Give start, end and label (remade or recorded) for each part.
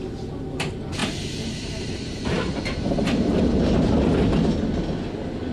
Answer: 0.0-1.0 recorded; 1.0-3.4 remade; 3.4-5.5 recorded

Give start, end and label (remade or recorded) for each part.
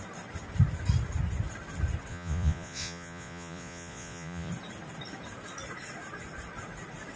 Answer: 0.0-2.1 recorded; 2.1-4.5 remade; 4.5-7.2 recorded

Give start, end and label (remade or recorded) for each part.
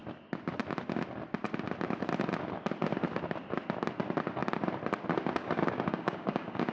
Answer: 0.0-5.4 recorded; 5.4-6.7 remade